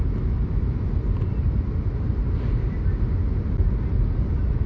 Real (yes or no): yes